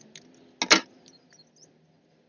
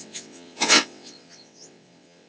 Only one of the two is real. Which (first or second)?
first